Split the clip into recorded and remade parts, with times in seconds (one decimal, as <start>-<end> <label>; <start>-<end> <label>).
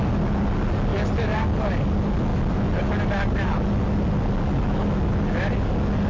0.0-6.1 recorded